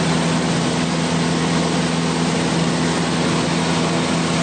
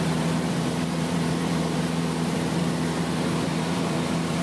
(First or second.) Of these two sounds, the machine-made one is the second